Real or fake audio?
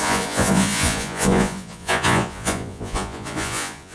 fake